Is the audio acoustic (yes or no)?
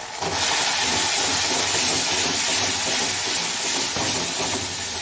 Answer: yes